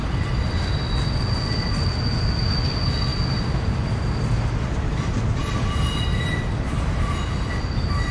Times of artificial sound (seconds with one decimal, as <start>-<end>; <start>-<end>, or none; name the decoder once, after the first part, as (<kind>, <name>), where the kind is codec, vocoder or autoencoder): none